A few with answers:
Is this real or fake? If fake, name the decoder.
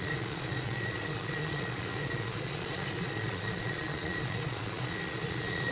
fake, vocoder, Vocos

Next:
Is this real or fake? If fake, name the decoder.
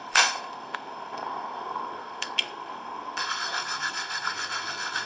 fake, codec, SNAC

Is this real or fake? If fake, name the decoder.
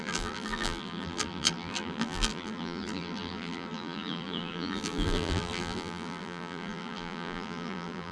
fake, vocoder, BigVGAN v2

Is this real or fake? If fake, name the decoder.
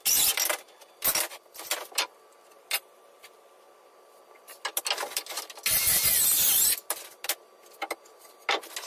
real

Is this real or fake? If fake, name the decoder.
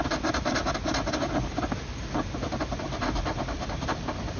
real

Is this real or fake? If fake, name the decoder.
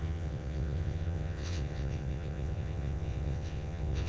fake, vocoder, WaveNeXt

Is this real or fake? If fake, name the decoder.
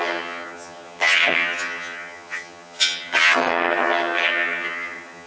fake, vocoder, HiFi-GAN